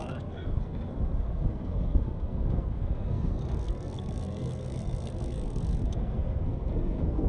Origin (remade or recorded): remade